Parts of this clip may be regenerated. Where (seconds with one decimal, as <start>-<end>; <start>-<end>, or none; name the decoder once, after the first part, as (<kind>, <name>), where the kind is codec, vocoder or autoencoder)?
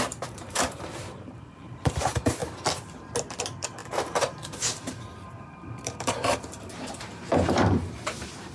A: 0.0-2.4 (vocoder, BigVGAN v2); 3.3-8.5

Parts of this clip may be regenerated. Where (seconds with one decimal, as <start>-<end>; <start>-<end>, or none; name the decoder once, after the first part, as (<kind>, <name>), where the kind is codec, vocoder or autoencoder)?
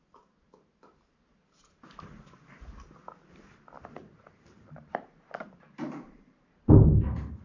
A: 4.0-7.4 (vocoder, BigVGAN v2)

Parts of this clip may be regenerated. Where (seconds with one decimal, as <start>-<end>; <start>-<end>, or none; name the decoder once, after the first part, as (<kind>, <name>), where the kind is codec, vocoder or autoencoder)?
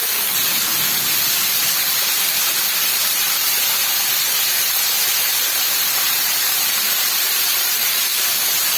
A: 0.0-0.5 (vocoder, BigVGAN v2); 3.1-3.6; 4.2-8.8